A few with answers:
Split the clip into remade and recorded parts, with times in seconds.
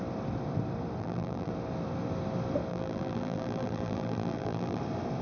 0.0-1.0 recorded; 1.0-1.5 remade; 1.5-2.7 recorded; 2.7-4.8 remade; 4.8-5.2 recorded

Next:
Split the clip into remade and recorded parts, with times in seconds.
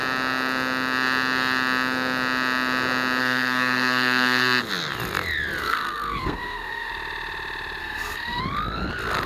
0.0-3.2 recorded; 3.2-4.6 remade; 4.6-5.6 recorded; 5.6-6.9 remade; 6.9-7.8 recorded; 7.8-8.4 remade; 8.4-9.3 recorded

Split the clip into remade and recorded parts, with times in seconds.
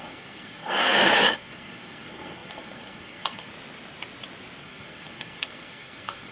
0.0-3.5 remade; 3.5-4.6 recorded; 4.6-6.3 remade